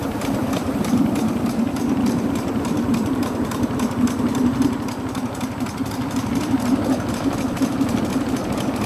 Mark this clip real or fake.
fake